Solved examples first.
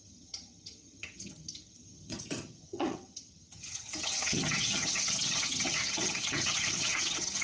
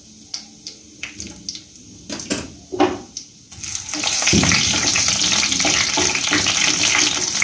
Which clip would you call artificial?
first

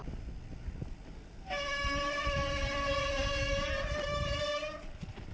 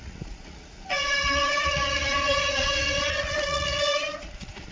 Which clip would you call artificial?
second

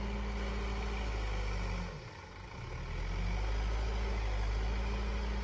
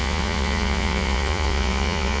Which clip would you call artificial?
second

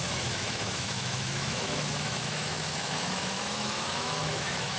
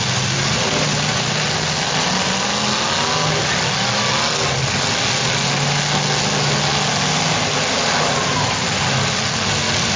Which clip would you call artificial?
first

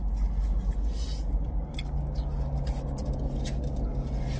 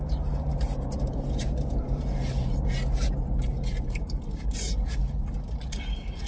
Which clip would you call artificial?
second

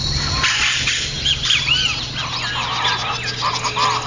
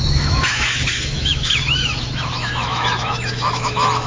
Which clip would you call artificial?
second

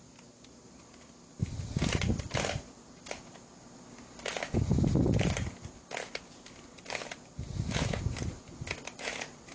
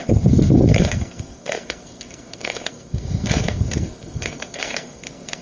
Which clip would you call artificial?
second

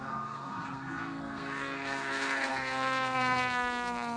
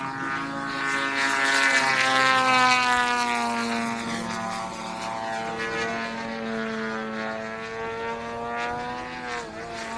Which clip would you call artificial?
first